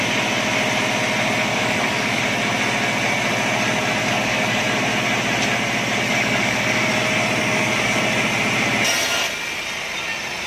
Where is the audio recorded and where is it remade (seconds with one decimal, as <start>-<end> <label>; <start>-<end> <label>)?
0.0-1.5 recorded; 1.5-2.2 remade; 2.2-4.0 recorded; 4.0-4.6 remade; 4.6-6.1 recorded; 6.1-6.9 remade; 6.9-7.4 recorded; 7.4-8.0 remade; 8.0-10.5 recorded